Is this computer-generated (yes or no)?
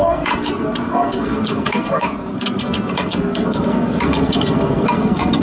yes